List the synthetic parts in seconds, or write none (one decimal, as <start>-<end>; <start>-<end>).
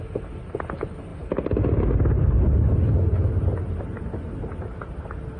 none